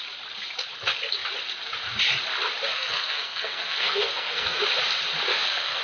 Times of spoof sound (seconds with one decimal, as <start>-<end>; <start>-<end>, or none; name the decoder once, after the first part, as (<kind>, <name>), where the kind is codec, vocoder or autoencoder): 2.7-4.6 (codec, SNAC); 5.3-5.8

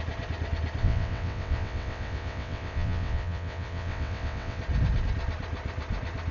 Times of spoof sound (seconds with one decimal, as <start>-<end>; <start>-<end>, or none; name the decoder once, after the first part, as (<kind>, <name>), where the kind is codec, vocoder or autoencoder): 0.8-4.6 (vocoder, WaveNeXt)

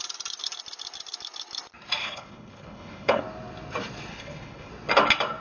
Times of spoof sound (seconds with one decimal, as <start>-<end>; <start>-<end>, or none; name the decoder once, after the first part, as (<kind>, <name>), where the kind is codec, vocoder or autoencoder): 2.0-3.2 (codec, HILCodec); 4.1-4.7

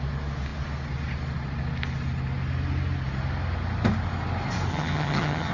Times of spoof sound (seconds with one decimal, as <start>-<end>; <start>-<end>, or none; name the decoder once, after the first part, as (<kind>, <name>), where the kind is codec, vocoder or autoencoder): 4.7-5.5 (vocoder, HiFi-GAN)

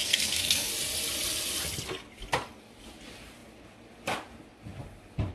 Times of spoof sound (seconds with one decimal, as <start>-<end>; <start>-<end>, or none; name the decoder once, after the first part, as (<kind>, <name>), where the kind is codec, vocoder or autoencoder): 0.0-0.7 (codec, SNAC)

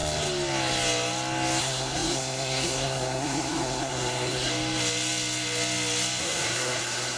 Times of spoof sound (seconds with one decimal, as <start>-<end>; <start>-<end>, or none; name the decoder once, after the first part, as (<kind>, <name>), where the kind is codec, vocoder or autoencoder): 1.6-4.5 (codec, SNAC); 6.2-7.2

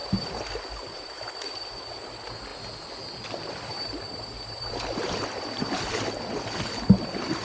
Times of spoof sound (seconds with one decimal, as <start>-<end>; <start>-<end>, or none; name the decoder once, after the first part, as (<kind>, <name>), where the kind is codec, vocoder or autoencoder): 2.5-5.6 (vocoder, BigVGAN v2)

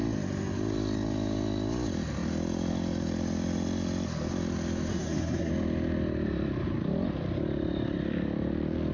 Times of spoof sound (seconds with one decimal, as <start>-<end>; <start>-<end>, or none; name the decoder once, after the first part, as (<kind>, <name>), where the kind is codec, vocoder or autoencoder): 4.9-5.5 (codec, SNAC)